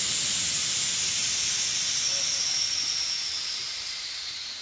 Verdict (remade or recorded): recorded